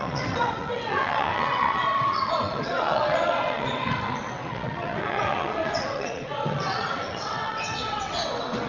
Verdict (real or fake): fake